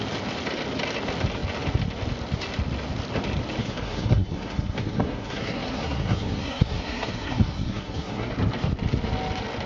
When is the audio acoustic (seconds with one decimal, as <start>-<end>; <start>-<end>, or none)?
0.0-3.6; 8.3-9.7